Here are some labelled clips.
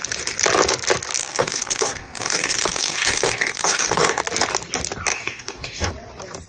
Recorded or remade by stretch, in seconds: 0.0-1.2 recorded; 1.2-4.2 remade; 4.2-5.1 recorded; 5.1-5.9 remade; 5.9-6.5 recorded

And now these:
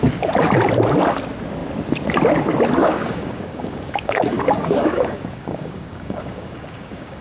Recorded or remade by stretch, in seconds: 0.0-2.8 recorded; 2.8-7.2 remade

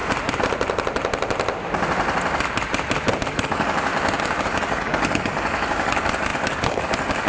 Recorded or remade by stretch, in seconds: 0.0-3.2 recorded; 3.2-3.9 remade; 3.9-4.4 recorded; 4.4-7.3 remade